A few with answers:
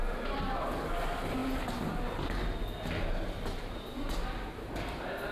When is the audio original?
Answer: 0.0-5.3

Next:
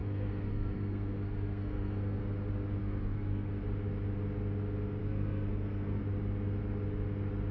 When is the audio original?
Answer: 2.2-2.8; 3.6-5.0; 6.0-7.5

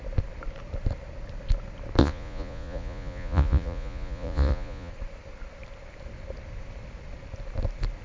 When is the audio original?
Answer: 0.0-2.0; 4.9-8.0

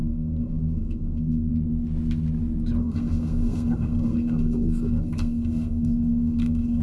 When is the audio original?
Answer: 1.5-2.8

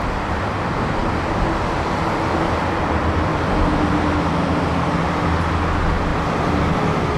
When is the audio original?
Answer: 0.0-7.2

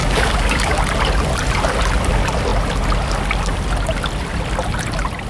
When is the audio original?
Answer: 0.8-5.3

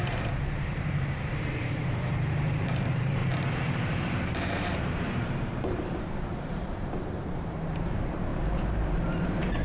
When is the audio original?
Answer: none

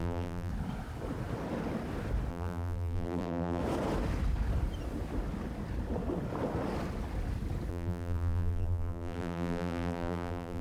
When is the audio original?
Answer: 0.5-2.3; 3.6-7.7